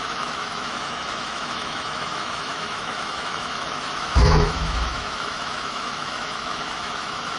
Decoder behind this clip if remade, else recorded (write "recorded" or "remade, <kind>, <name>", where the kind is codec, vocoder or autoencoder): remade, autoencoder, DAC-VAE